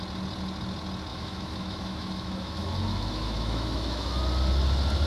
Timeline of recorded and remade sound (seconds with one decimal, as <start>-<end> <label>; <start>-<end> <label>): 0.0-1.1 recorded; 1.1-4.2 remade; 4.2-5.1 recorded